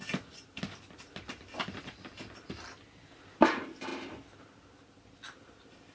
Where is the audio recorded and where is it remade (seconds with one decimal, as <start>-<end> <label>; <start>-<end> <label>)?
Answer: 0.0-5.9 recorded